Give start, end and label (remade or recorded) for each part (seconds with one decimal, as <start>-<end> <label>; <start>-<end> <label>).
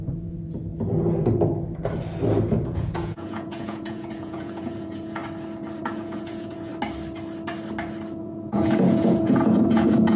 0.0-0.7 remade; 0.7-2.5 recorded; 2.5-5.2 remade; 5.2-5.8 recorded; 5.8-6.7 remade; 6.7-8.2 recorded; 8.2-10.2 remade